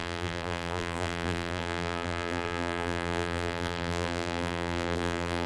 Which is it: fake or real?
fake